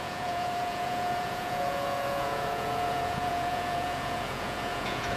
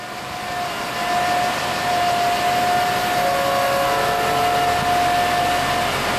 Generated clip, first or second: first